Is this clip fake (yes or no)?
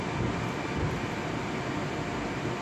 no